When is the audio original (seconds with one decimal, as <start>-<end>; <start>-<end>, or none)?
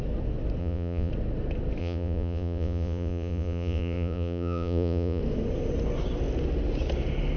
0.0-0.6; 1.1-1.8; 5.2-7.4